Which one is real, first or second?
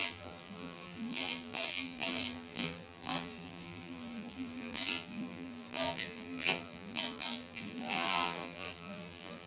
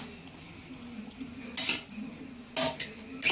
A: second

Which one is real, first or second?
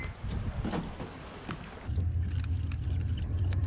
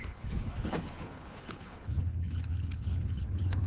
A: first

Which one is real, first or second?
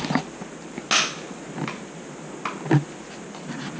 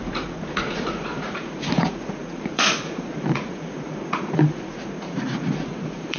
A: first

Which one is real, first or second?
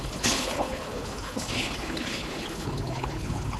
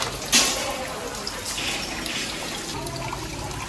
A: second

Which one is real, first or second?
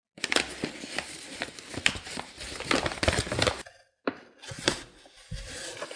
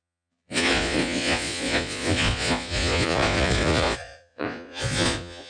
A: first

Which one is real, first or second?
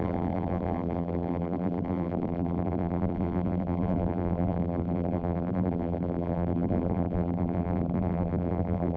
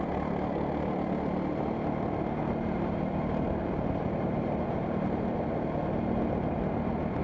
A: second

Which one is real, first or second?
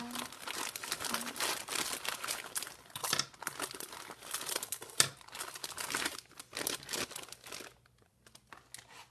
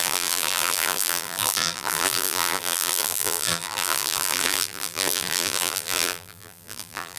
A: first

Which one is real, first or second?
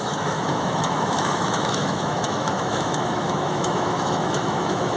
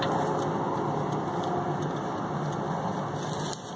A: second